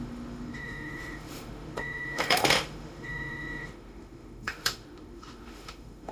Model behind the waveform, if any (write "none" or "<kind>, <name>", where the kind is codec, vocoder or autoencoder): autoencoder, DAC-VAE